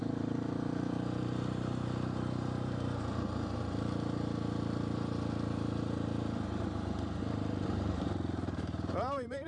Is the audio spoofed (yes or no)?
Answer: yes